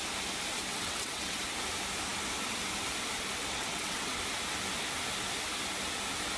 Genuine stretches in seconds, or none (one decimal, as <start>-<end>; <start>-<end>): 0.0-0.7; 1.4-3.4; 4.2-6.4